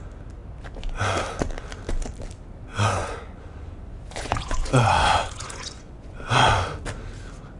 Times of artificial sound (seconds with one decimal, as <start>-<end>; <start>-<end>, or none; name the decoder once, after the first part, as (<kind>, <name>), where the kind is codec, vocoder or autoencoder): 2.7-6.3 (vocoder, Vocos)